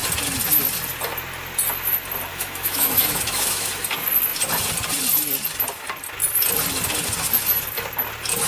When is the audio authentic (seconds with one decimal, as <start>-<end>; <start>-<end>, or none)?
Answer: 0.0-2.3; 3.7-8.5